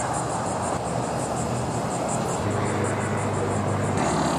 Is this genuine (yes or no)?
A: yes